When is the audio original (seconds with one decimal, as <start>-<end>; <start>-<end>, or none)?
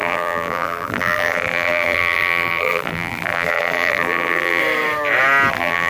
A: 4.6-5.5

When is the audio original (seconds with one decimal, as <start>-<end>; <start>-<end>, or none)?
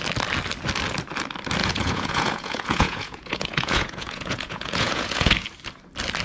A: 0.0-1.6; 5.3-6.2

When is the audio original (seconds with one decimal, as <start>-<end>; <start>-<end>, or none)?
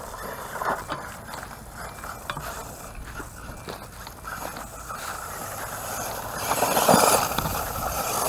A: 0.0-7.5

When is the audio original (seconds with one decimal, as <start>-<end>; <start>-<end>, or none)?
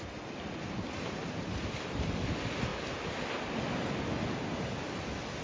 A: 0.0-1.2; 2.2-5.4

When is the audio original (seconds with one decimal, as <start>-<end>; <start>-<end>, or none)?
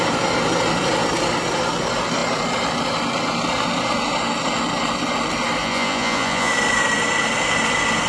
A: 0.0-5.6; 6.5-8.1